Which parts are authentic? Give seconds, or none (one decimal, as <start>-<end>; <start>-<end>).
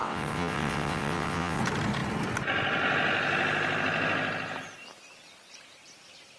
1.6-6.4